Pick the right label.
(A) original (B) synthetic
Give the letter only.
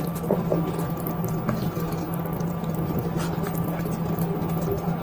A